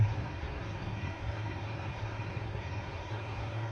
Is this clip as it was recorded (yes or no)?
no